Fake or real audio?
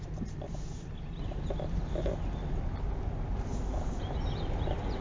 real